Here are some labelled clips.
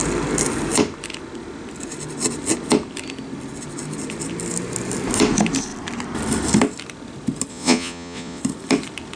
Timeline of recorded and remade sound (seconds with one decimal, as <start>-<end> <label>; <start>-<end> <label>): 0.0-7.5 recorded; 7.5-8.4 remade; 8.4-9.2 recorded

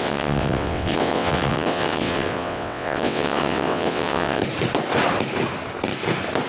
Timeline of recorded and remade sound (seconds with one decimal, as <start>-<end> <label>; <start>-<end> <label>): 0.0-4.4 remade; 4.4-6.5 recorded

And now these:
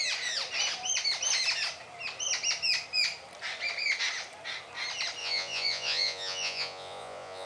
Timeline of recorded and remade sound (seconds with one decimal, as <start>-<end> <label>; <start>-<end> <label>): 0.0-5.2 recorded; 5.2-7.5 remade